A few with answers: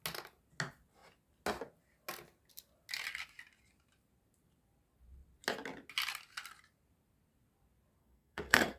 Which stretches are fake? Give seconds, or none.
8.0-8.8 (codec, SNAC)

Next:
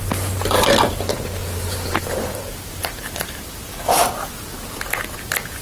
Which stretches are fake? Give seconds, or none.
1.4-3.9 (vocoder, BigVGAN v2)

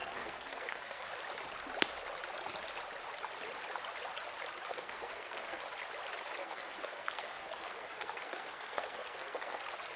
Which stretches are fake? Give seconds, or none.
0.0-1.1 (codec, SNAC); 4.7-5.6; 6.4-9.6

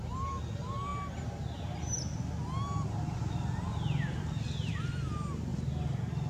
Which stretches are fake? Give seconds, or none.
none

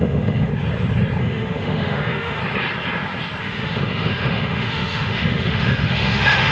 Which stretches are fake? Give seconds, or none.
0.0-0.5 (autoencoder, DAC-VAE); 1.2-2.4; 3.4-6.5

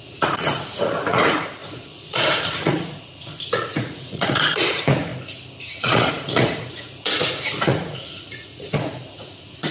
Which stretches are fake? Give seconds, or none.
0.0-5.1 (vocoder, Vocos); 5.7-9.7

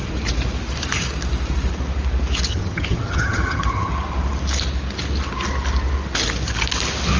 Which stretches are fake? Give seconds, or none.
2.5-3.9 (vocoder, HiFi-GAN)

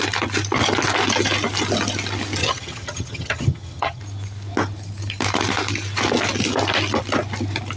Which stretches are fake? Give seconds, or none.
2.4-4.0 (vocoder, HiFi-GAN)